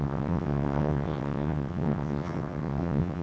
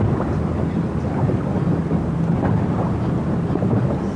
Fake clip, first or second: first